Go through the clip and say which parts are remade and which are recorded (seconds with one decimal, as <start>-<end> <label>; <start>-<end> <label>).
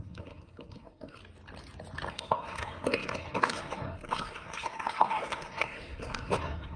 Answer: 0.0-1.2 remade; 1.2-2.1 recorded; 2.1-6.8 remade